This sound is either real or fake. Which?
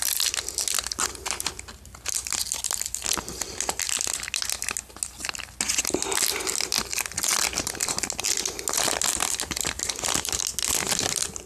real